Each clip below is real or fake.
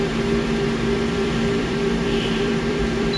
fake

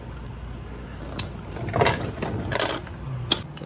real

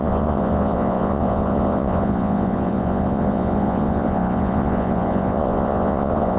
fake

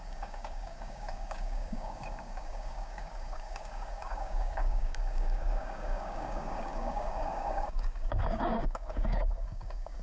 fake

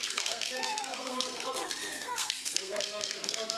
fake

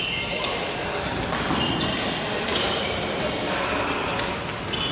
real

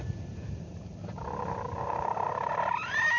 real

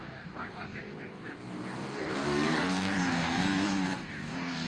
fake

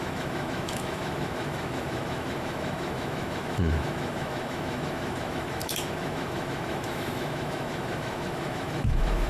fake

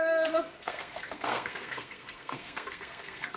fake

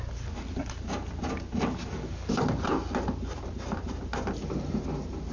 real